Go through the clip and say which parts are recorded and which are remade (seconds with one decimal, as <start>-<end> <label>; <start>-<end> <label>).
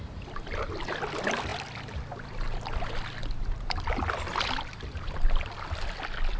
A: 0.0-6.4 recorded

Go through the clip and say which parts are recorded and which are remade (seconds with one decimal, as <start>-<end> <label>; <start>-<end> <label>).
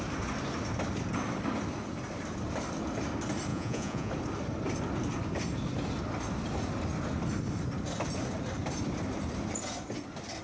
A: 0.0-3.5 recorded; 3.5-4.1 remade; 4.1-10.4 recorded